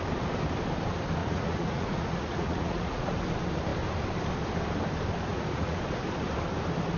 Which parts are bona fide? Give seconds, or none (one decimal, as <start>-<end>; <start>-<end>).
0.0-1.2; 3.1-5.3; 5.8-7.0